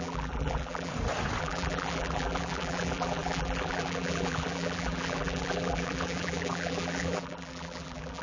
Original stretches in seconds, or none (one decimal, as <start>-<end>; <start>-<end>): 0.9-1.4